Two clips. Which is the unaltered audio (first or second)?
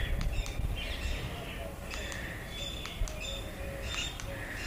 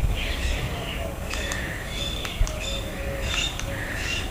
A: first